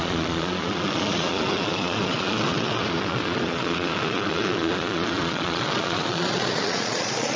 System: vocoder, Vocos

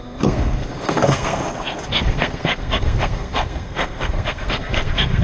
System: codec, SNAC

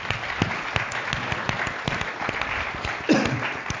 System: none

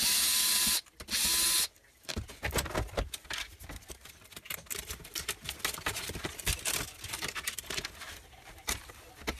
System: none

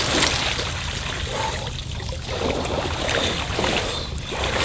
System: none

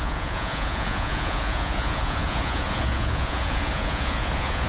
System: vocoder, Vocos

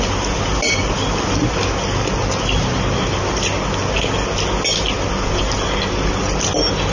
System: none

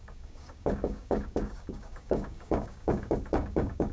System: codec, DAC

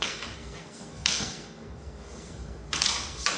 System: codec, SNAC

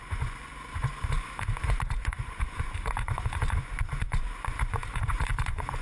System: vocoder, Vocos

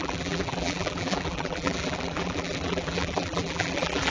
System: vocoder, BigVGAN v2